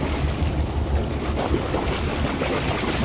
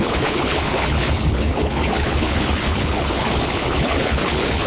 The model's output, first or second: second